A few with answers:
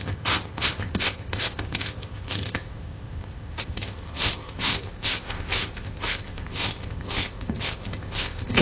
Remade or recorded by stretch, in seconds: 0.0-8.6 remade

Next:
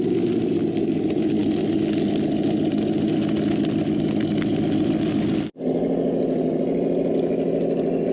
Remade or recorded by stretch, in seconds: 0.0-8.1 recorded